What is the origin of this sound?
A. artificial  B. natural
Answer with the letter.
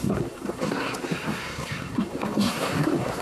A